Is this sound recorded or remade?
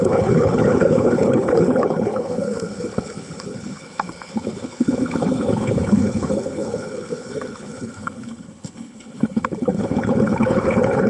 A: remade